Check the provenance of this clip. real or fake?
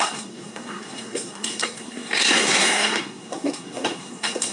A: fake